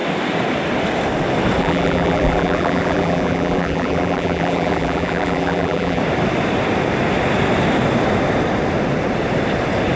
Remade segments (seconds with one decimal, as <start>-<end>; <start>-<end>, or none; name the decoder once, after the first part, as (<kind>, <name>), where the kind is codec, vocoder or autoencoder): 1.6-6.0 (vocoder, BigVGAN v2)